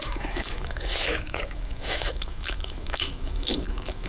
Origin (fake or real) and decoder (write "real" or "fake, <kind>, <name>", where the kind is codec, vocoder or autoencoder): fake, autoencoder, DAC-VAE